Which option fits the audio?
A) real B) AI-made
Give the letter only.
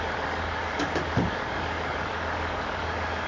B